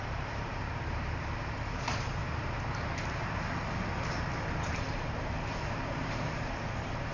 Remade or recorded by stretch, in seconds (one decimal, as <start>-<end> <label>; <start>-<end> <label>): 0.0-2.2 remade; 2.2-4.7 recorded; 4.7-7.1 remade